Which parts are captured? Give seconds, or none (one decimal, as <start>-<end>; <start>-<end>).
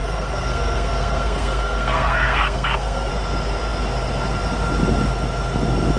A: 3.1-6.0